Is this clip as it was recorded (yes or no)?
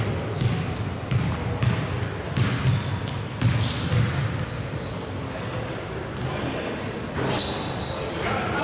yes